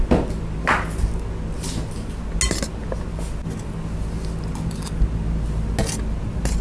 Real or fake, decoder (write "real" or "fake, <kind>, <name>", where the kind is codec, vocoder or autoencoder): real